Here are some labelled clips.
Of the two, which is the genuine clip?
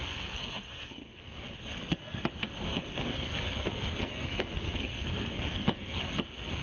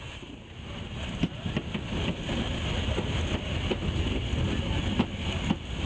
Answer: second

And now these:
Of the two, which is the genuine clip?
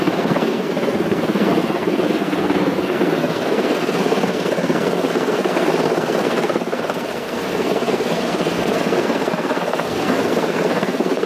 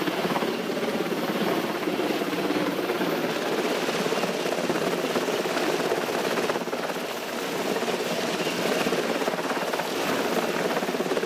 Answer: second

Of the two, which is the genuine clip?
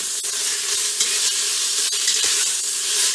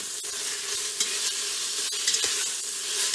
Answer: second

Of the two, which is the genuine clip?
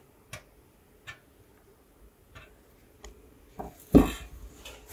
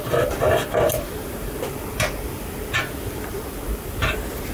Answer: first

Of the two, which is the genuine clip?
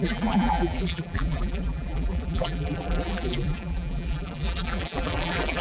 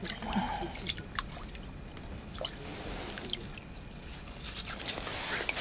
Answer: second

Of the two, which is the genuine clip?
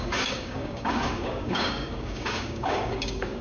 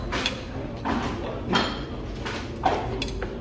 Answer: second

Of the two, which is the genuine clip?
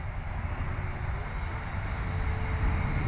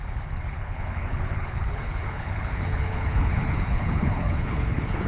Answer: first